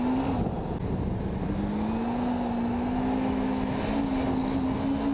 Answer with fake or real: real